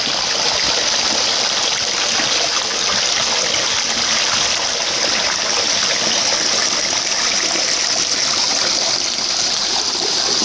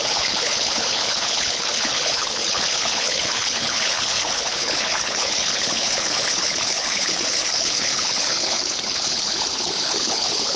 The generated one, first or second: second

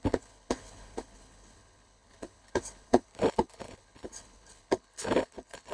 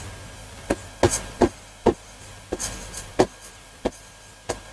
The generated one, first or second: first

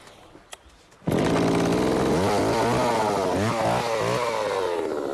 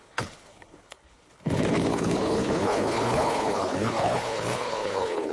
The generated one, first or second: second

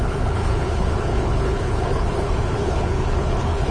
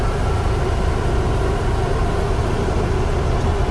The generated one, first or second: first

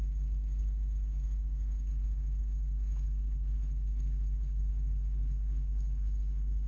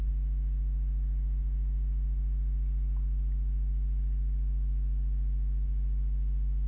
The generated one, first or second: first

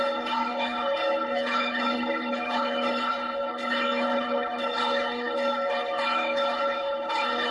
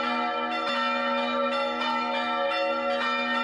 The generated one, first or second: first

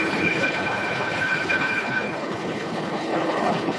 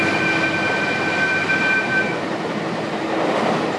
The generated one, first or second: first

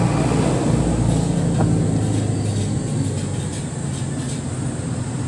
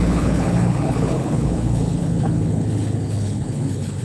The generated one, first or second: second